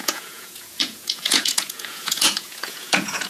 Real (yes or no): no